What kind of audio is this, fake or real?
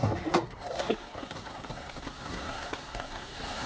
fake